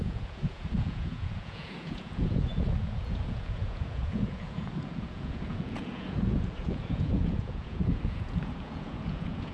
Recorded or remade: remade